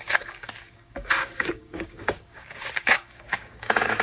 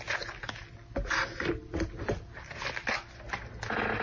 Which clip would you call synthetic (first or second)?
first